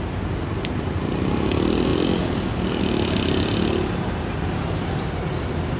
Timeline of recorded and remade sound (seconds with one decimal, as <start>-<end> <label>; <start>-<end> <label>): 0.0-5.8 recorded